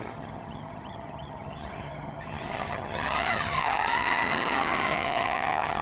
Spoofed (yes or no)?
yes